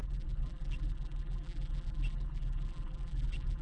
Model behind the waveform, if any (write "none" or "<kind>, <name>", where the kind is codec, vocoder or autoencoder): vocoder, BigVGAN v2